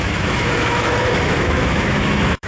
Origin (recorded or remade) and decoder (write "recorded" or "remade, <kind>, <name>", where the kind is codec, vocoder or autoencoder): remade, autoencoder, DAC-VAE